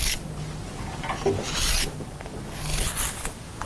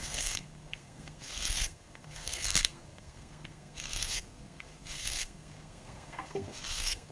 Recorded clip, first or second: first